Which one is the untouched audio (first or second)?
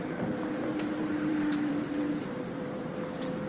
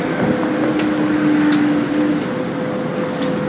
second